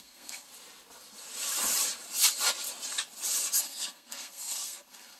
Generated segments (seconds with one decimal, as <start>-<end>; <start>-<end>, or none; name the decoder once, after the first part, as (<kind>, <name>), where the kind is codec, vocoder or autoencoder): 0.0-0.5 (codec, SNAC); 3.6-5.2